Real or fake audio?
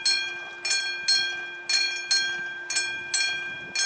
real